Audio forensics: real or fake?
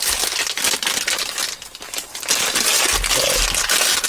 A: real